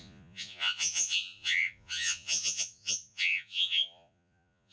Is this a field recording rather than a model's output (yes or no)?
no